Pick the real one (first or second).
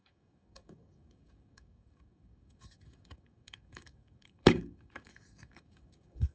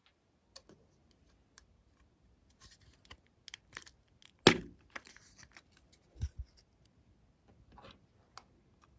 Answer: second